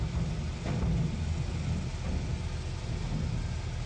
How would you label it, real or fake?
real